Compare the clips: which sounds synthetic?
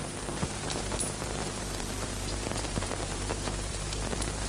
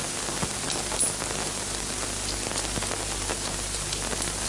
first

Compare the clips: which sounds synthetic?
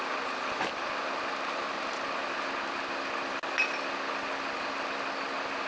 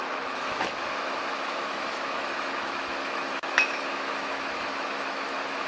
second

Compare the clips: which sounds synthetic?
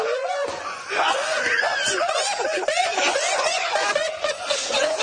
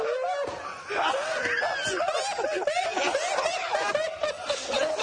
first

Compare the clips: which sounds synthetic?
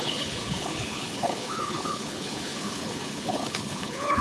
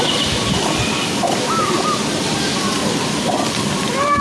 first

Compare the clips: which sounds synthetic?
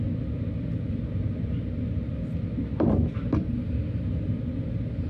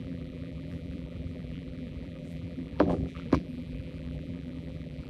second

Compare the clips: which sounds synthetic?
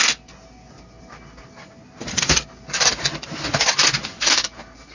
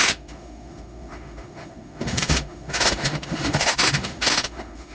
second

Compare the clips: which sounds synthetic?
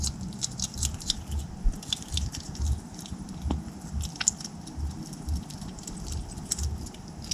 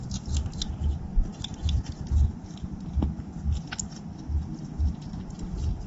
first